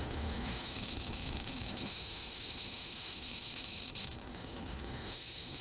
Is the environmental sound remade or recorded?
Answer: remade